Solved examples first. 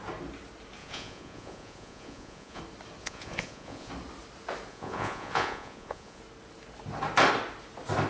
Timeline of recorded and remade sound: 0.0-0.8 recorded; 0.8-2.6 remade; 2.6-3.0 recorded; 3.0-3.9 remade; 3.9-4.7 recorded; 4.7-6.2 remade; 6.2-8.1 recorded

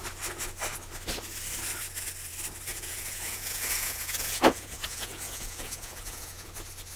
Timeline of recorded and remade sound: 0.0-2.7 recorded; 2.7-6.5 remade; 6.5-7.0 recorded

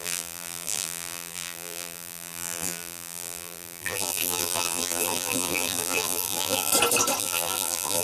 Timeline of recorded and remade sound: 0.0-6.7 remade; 6.7-7.2 recorded; 7.2-8.0 remade

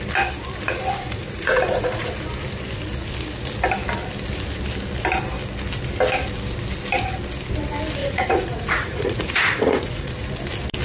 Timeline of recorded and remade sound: 0.0-1.2 recorded; 1.2-2.1 remade; 2.1-8.0 recorded; 8.0-10.1 remade; 10.1-10.8 recorded

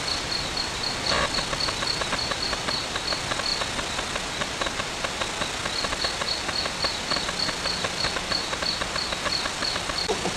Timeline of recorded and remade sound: 0.0-10.4 recorded

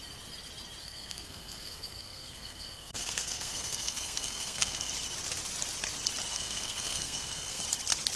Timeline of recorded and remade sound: 0.0-0.8 recorded; 0.8-4.9 remade; 4.9-6.3 recorded; 6.3-7.6 remade; 7.6-8.2 recorded

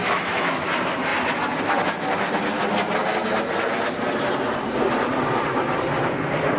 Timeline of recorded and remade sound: 0.0-0.7 remade; 0.7-6.6 recorded

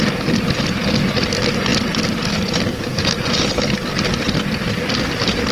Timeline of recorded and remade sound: 0.0-5.5 recorded